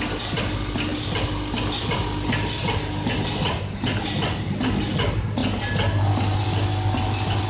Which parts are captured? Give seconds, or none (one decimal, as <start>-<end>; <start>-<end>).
0.0-7.5